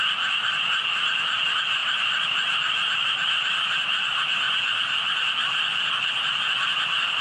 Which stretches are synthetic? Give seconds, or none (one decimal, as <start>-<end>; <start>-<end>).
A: 1.8-3.3